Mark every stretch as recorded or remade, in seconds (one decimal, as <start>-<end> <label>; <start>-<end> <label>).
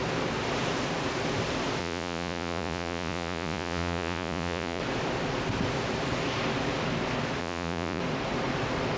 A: 0.0-1.8 recorded; 1.8-4.8 remade; 4.8-7.4 recorded; 7.4-8.0 remade; 8.0-9.0 recorded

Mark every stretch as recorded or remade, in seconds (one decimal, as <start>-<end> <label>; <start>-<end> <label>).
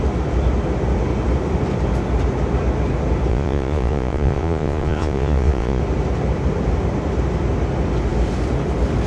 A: 0.0-3.3 recorded; 3.3-5.8 remade; 5.8-9.1 recorded